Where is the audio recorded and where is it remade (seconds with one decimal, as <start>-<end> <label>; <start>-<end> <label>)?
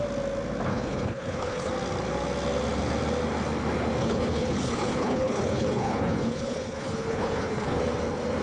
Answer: 0.0-0.7 recorded; 0.7-1.7 remade; 1.7-4.0 recorded; 4.0-7.8 remade; 7.8-8.4 recorded